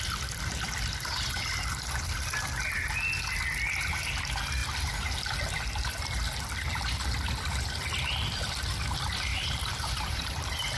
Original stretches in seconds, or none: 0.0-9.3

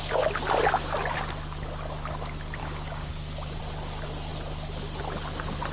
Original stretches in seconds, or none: 0.0-2.6; 3.6-5.7

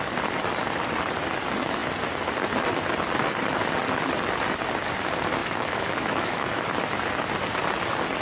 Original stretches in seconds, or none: 0.0-5.4; 6.6-8.2

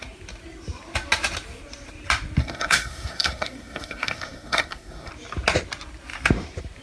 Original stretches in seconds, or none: 0.0-2.4; 5.1-6.8